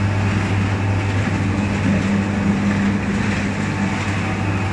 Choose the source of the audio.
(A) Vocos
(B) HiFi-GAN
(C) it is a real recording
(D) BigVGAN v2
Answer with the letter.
C